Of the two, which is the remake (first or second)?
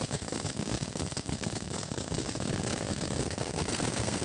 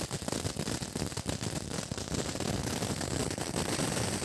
first